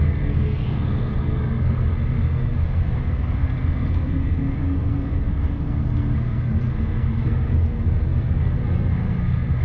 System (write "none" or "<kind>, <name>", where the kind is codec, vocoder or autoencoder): codec, SNAC